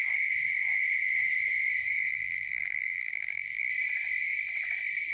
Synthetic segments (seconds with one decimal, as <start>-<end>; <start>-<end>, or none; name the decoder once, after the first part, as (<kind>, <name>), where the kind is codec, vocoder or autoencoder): 2.1-3.7 (vocoder, BigVGAN v2)